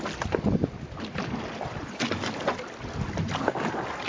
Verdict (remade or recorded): recorded